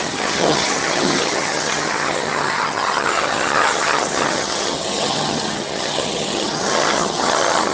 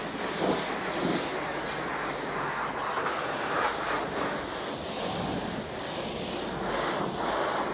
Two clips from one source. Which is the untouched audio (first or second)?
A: second